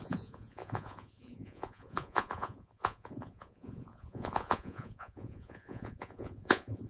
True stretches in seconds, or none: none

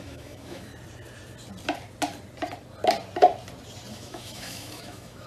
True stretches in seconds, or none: 0.7-3.9

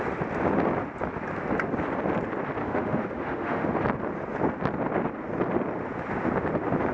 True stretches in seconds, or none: 0.0-2.6; 3.8-6.9

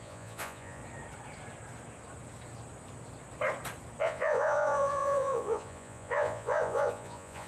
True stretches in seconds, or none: 0.8-4.0

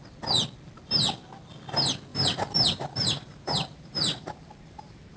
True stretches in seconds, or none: 0.0-2.1

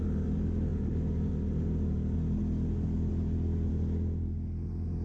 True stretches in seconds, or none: 0.0-5.0

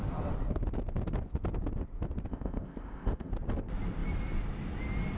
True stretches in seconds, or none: 0.0-2.3; 3.3-5.2

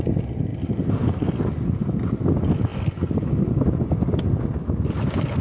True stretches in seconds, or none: 0.0-5.4